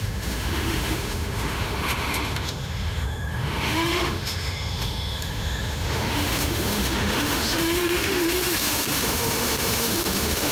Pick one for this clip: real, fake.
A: fake